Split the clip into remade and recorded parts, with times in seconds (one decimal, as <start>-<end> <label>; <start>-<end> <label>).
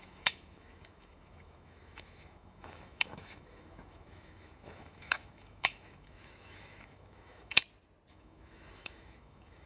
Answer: 0.0-7.6 remade; 7.6-8.1 recorded; 8.1-9.7 remade